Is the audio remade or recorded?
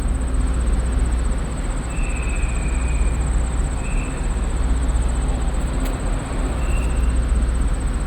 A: recorded